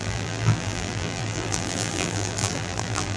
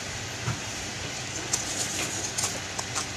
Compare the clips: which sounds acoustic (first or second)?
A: second